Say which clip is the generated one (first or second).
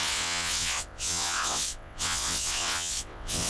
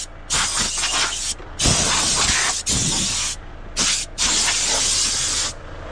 first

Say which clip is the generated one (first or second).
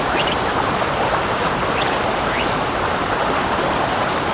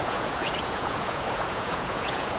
second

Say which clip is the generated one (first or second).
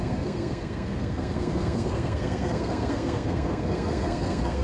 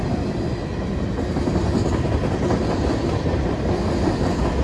first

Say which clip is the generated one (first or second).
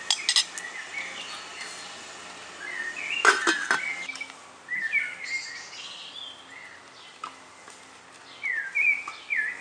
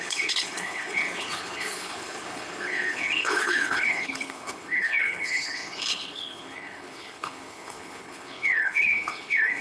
second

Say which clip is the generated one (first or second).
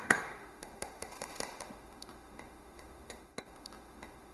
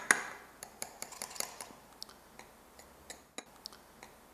first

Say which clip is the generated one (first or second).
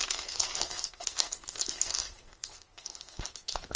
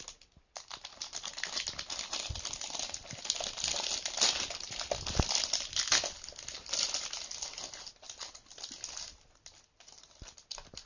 first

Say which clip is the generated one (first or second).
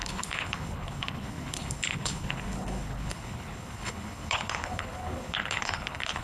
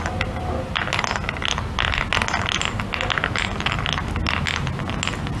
first